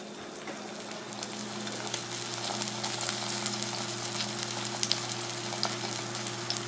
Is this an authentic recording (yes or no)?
yes